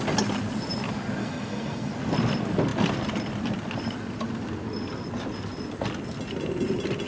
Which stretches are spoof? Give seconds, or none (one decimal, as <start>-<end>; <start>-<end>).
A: 1.2-1.9

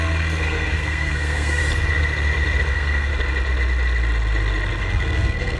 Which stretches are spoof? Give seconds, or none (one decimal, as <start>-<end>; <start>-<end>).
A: 0.0-1.6; 2.7-3.1; 4.8-5.6